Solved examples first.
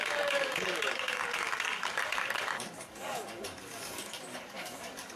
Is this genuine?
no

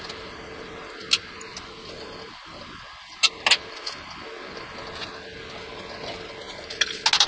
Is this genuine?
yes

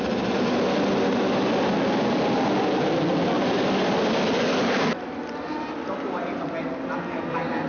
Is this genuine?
yes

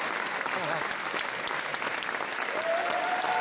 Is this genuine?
yes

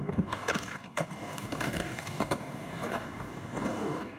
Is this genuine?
no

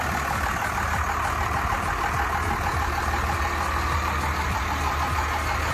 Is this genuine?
yes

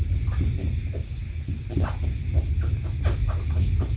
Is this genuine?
yes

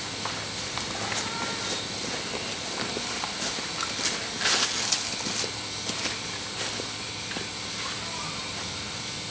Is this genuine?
yes